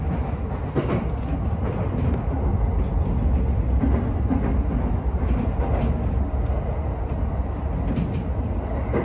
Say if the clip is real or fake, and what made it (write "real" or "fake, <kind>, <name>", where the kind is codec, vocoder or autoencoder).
real